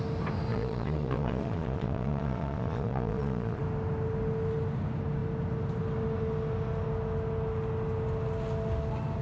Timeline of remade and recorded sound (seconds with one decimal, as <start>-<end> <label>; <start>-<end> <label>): 0.0-0.5 recorded; 0.5-3.6 remade; 3.6-9.2 recorded